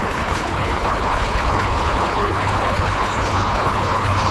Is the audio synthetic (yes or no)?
yes